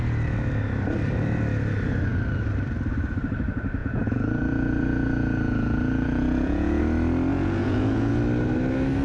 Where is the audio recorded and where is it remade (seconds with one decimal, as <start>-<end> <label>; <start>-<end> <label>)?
0.0-3.8 recorded; 3.8-6.8 remade; 6.8-7.3 recorded; 7.3-8.2 remade; 8.2-9.0 recorded